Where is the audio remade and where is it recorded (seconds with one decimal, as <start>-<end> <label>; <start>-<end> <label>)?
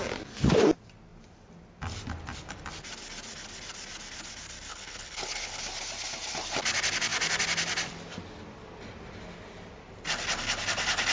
0.0-4.7 recorded; 4.7-5.6 remade; 5.6-11.1 recorded